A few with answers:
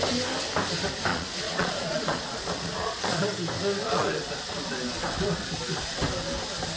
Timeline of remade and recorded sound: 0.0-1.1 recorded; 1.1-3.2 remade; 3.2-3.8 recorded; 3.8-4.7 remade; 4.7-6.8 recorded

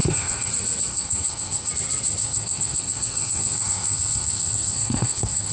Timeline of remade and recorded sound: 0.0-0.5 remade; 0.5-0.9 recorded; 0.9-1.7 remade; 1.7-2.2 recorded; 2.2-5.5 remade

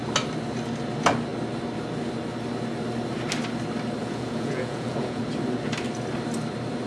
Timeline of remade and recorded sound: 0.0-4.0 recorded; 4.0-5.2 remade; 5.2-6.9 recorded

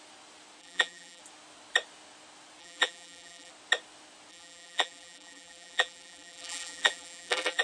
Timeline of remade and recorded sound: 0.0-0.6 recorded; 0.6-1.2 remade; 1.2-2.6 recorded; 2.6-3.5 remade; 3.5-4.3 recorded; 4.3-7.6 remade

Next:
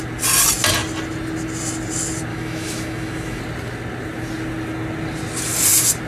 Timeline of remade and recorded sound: 0.0-2.3 recorded; 2.3-3.4 remade; 3.4-6.1 recorded

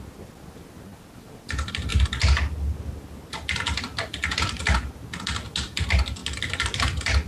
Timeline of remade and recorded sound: 0.0-6.2 recorded; 6.2-6.8 remade; 6.8-7.3 recorded

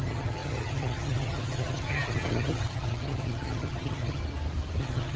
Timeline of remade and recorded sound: 0.0-4.2 remade; 4.2-4.8 recorded; 4.8-5.2 remade

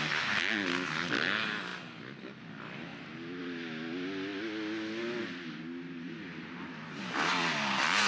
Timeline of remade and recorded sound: 0.0-8.1 recorded